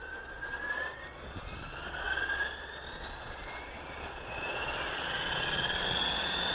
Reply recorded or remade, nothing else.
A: remade